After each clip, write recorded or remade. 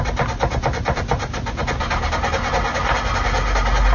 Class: recorded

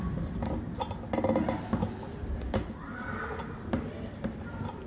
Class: recorded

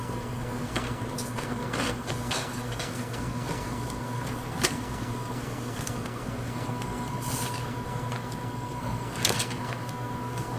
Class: remade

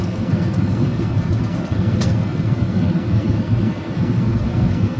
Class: remade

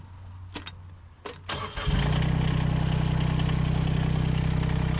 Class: recorded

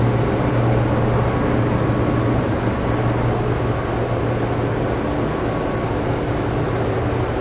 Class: recorded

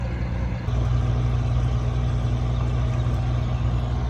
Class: recorded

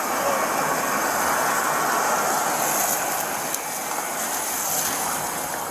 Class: recorded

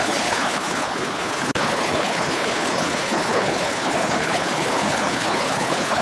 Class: remade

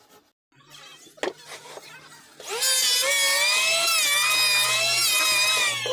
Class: recorded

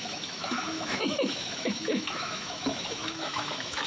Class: remade